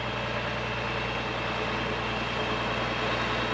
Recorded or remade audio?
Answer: recorded